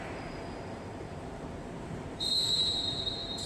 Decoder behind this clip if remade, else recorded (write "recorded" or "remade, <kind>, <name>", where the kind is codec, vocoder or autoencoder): remade, vocoder, BigVGAN v2